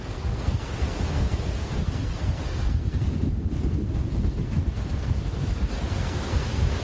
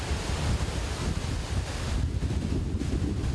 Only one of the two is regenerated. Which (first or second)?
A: first